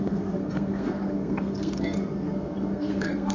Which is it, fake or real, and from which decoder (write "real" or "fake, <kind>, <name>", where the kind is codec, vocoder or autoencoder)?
fake, codec, SNAC